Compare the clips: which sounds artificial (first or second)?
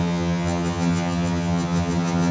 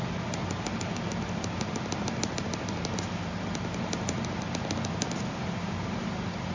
first